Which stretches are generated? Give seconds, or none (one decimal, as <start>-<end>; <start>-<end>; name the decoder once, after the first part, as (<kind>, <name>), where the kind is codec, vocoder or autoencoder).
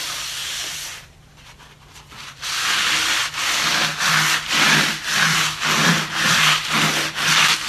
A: 0.4-1.3 (vocoder, BigVGAN v2); 5.8-6.7